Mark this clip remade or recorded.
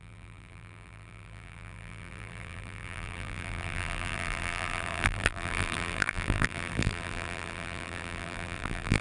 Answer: remade